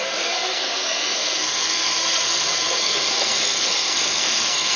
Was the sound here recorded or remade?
remade